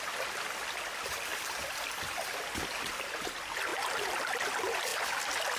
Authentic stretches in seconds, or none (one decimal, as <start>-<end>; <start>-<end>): 0.0-5.6